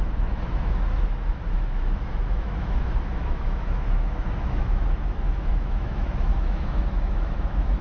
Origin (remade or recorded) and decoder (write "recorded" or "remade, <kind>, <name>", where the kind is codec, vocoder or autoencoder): remade, autoencoder, DAC-VAE